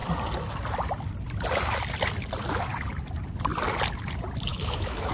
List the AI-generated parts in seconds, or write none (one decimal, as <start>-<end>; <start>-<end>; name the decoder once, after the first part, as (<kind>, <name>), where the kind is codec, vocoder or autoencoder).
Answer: 4.5-5.1 (autoencoder, DAC-VAE)

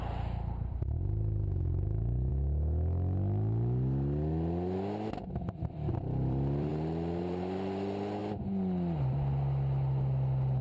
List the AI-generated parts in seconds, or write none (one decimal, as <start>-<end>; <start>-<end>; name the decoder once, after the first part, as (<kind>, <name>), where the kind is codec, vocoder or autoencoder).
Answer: 0.0-2.3 (vocoder, BigVGAN v2); 5.5-6.7; 7.2-8.2

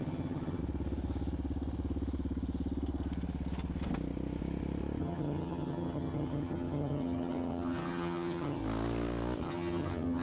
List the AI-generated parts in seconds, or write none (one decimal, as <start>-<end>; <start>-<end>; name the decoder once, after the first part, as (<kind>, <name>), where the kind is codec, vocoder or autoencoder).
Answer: 0.0-0.6 (vocoder, HiFi-GAN); 5.0-8.6; 9.4-10.2

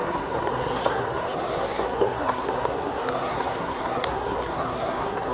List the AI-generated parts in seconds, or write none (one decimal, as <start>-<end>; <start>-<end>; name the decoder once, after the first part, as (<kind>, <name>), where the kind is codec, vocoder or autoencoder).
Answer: 0.0-5.3 (codec, SNAC)

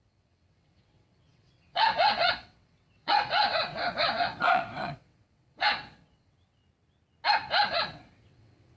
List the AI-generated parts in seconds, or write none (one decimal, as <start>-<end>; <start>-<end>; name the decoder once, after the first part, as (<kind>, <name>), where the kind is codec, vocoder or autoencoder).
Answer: 0.0-6.6 (vocoder, WaveNeXt); 7.7-8.8

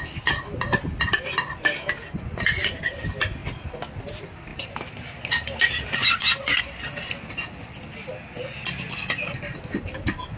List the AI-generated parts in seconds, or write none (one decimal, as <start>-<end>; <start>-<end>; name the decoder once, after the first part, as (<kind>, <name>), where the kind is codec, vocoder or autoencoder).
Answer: 4.5-6.6 (vocoder, BigVGAN v2)